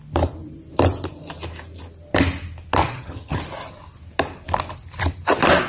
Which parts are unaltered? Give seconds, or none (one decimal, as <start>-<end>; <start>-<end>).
0.0-2.8; 3.4-5.7